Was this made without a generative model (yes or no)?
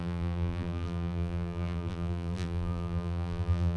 no